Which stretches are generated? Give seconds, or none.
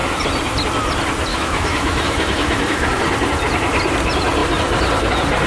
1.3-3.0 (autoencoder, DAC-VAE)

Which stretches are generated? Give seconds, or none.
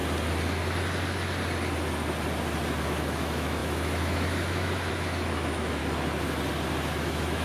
2.8-5.8 (autoencoder, DAC-VAE); 6.9-7.4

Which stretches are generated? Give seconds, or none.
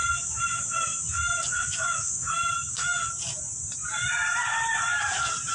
0.0-3.1 (autoencoder, DAC-VAE)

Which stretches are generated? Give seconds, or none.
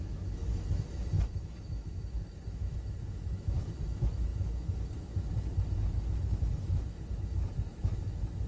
0.0-8.5 (autoencoder, DAC-VAE)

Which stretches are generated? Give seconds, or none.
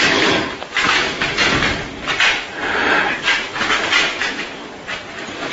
0.7-1.3 (autoencoder, DAC-VAE); 4.1-4.7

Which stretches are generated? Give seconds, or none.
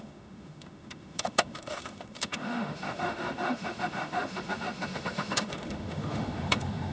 0.0-6.9 (autoencoder, DAC-VAE)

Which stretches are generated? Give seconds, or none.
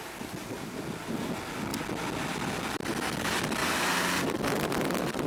none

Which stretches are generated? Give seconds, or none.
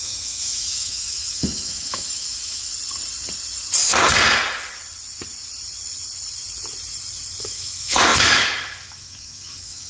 0.0-2.7 (autoencoder, DAC-VAE); 7.4-9.9